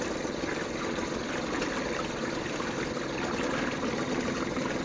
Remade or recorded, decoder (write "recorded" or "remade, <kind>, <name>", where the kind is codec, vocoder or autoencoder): recorded